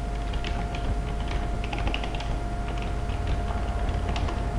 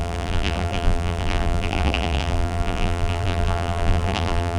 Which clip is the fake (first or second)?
second